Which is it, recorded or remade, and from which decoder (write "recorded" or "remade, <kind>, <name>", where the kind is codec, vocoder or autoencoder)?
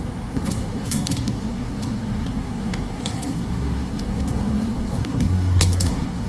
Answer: remade, codec, SNAC